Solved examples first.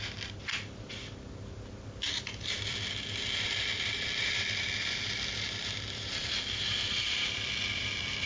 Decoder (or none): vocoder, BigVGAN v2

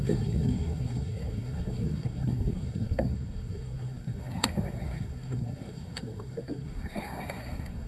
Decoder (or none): codec, SNAC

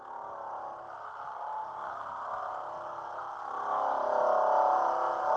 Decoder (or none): none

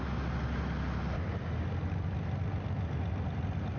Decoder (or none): none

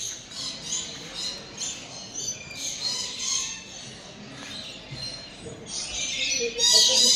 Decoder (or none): none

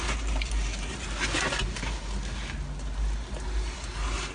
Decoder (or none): none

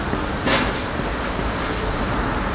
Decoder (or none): none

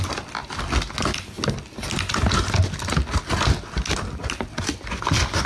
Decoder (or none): none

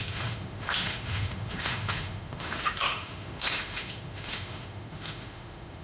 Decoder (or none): autoencoder, DAC-VAE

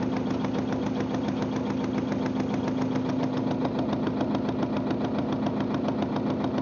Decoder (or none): none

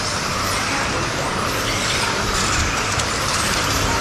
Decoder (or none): vocoder, BigVGAN v2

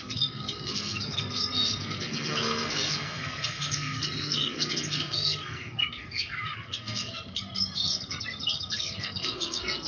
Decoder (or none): codec, SNAC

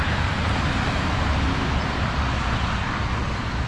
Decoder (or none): none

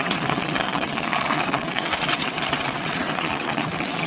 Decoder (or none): vocoder, WaveNeXt